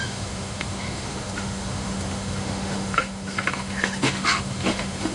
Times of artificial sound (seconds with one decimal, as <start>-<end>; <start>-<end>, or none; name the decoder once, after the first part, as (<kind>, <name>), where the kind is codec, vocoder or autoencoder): 0.0-5.1 (autoencoder, DAC-VAE)